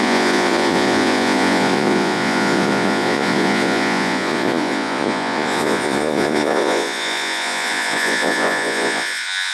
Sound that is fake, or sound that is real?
fake